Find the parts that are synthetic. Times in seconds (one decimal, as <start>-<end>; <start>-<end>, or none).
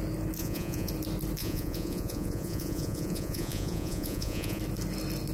0.4-0.9; 1.4-4.6